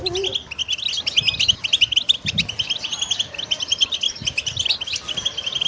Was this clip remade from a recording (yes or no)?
no